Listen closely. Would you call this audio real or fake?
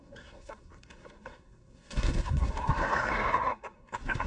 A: fake